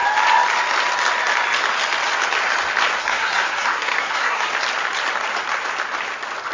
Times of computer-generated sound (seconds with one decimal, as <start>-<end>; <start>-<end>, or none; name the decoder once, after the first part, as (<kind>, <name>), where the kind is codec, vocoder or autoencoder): 3.0-4.5 (codec, SNAC)